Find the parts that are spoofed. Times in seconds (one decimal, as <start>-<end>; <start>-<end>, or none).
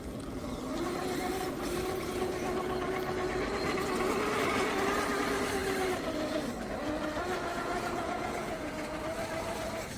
7.5-9.0